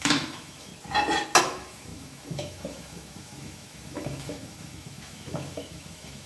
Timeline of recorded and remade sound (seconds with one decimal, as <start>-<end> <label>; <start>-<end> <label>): 0.0-0.7 remade; 0.7-1.4 recorded; 1.4-6.3 remade